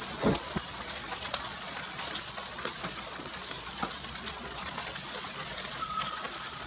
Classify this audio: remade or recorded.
remade